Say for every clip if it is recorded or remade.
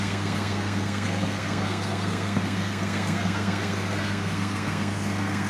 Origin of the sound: remade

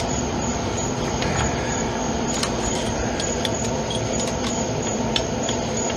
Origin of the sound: remade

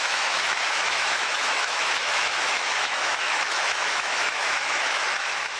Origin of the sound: remade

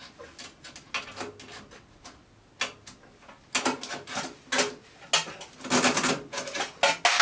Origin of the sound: recorded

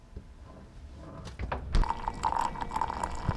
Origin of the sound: recorded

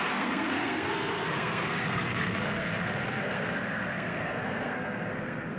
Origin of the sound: remade